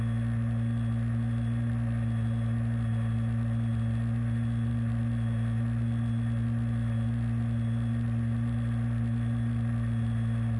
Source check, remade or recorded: recorded